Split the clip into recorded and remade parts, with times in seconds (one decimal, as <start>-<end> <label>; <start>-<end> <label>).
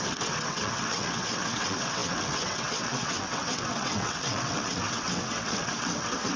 0.0-6.4 remade